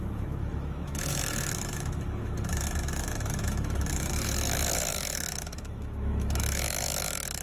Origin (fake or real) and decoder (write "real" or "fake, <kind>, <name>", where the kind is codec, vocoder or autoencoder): fake, autoencoder, DAC-VAE